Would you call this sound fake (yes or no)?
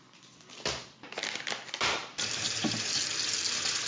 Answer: no